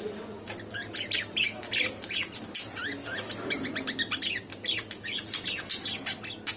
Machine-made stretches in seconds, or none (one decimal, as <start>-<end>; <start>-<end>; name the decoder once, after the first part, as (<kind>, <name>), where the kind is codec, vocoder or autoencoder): none